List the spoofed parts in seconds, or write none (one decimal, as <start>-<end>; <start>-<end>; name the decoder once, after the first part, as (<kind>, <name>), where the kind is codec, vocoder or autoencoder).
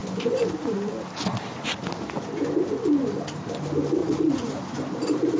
4.0-4.6 (vocoder, Vocos)